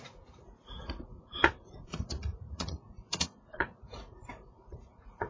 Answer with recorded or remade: remade